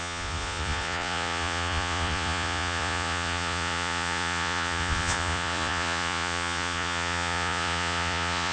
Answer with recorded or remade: remade